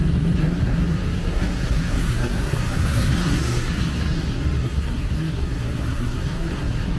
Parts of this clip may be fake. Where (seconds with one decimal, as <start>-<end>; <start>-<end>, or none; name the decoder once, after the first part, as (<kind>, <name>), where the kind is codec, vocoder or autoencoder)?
0.0-7.0 (codec, SNAC)